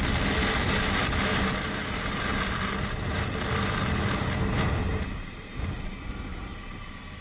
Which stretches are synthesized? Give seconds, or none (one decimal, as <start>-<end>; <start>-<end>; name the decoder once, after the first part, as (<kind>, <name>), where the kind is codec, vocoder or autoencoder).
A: 4.8-6.1 (vocoder, BigVGAN v2)